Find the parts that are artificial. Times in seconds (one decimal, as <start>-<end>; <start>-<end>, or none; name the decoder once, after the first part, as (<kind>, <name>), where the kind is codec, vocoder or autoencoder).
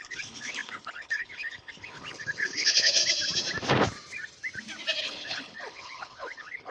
0.0-3.0 (codec, HILCodec); 5.0-6.7